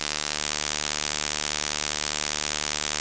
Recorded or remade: recorded